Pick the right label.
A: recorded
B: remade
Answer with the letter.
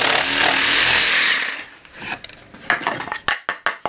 A